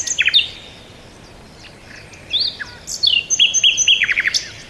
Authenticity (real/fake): real